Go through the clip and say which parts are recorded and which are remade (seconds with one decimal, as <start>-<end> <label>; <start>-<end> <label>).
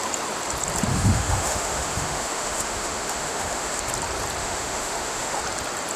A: 0.0-0.9 recorded; 0.9-3.8 remade; 3.8-4.4 recorded; 4.4-5.4 remade; 5.4-6.0 recorded